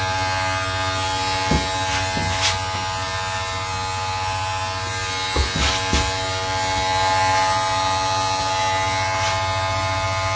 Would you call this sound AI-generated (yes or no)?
no